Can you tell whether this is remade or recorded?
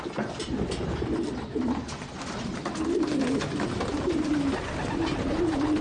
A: recorded